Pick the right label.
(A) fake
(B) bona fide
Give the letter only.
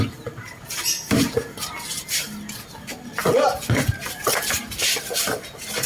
B